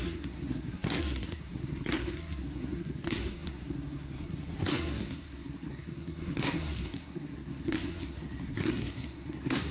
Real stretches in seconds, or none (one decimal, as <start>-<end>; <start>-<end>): none